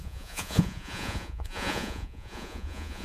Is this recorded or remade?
remade